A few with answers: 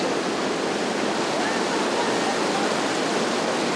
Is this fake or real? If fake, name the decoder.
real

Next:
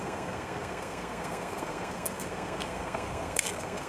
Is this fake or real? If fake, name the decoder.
fake, codec, SNAC